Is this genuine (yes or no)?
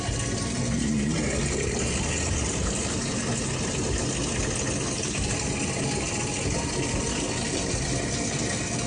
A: yes